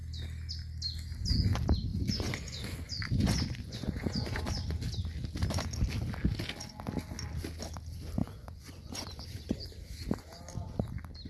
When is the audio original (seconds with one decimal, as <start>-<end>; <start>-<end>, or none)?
0.0-1.9; 4.5-8.2; 9.2-11.3